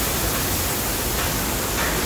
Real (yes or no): yes